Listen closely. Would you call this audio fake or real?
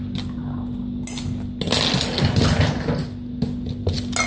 real